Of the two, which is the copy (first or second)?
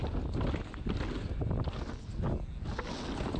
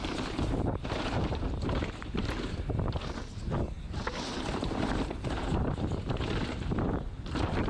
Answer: second